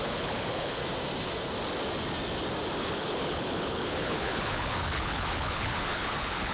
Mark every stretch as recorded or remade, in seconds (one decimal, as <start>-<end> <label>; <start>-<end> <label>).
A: 0.0-0.8 remade; 0.8-2.8 recorded; 2.8-6.5 remade